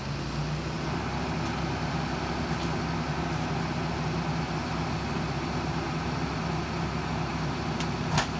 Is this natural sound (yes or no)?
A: yes